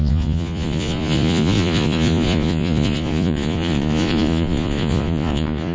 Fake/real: fake